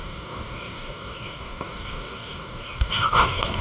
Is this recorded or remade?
remade